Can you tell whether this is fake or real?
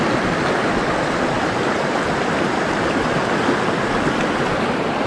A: real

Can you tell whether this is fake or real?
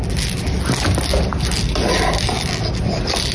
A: real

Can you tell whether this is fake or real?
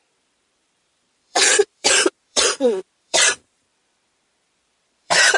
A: fake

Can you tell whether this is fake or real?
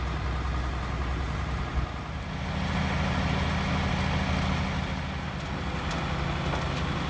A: real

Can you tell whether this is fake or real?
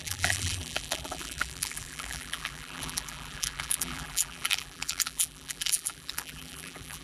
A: fake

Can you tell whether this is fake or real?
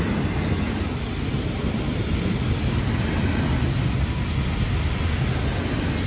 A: real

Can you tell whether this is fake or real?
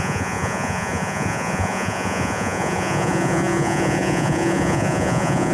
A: fake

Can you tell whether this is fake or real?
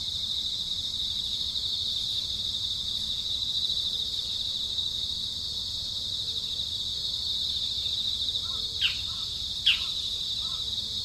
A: real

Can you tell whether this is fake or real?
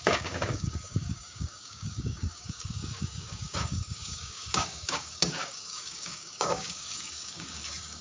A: fake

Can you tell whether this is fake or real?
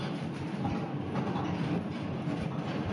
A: real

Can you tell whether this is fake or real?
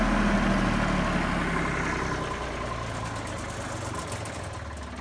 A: real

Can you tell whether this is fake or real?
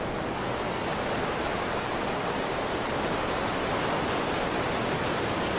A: real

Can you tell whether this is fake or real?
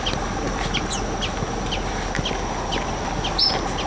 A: real